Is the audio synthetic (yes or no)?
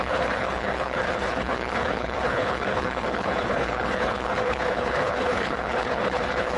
yes